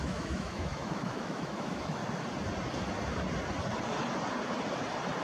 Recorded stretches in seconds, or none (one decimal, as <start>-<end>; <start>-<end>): 2.0-5.2